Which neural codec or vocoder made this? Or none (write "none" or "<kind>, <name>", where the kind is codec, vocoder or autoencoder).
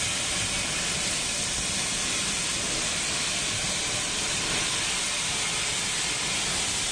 none